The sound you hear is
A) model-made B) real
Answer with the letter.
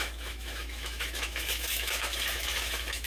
A